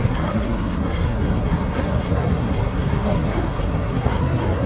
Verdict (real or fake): fake